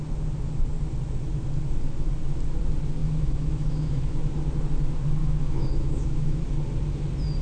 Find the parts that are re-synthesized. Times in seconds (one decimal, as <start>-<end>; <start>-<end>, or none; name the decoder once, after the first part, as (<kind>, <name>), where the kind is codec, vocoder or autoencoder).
3.0-4.0 (autoencoder, DAC-VAE); 5.2-6.4